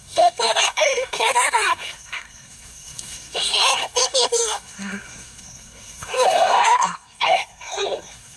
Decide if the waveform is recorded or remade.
remade